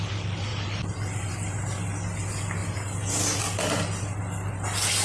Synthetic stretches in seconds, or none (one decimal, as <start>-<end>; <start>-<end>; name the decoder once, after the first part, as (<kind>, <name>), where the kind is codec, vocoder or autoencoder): 0.5-1.3 (vocoder, BigVGAN v2); 2.6-3.4